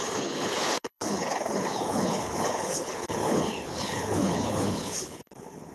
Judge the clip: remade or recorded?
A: remade